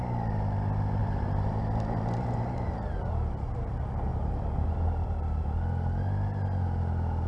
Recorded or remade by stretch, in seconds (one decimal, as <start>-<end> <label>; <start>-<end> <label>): 0.0-1.0 recorded; 1.0-1.6 remade; 1.6-4.1 recorded; 4.1-4.7 remade; 4.7-7.3 recorded